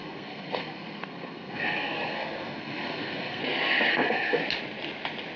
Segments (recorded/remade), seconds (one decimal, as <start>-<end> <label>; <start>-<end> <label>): 0.0-3.4 remade; 3.4-3.9 recorded; 3.9-4.4 remade; 4.4-5.4 recorded